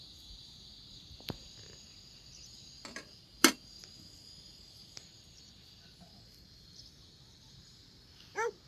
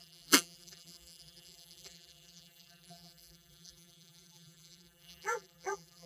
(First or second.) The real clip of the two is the first